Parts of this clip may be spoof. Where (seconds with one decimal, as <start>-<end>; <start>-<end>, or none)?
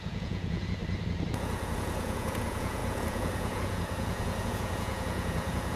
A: 0.0-0.8; 1.3-5.8